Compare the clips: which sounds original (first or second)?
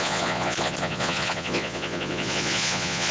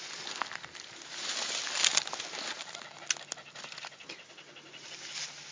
second